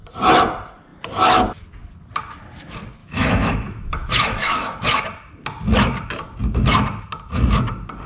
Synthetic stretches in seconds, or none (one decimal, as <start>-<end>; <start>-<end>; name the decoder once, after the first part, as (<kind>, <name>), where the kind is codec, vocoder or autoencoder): 3.0-5.0 (autoencoder, DAC-VAE)